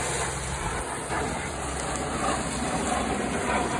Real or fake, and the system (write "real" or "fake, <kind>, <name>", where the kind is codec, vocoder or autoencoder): real